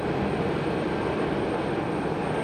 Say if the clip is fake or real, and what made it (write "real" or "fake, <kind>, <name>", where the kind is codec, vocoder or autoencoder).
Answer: real